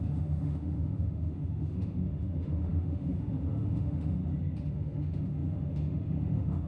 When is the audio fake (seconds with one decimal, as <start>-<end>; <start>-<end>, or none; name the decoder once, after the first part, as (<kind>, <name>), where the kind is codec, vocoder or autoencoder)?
0.0-4.2 (autoencoder, DAC-VAE); 4.7-6.7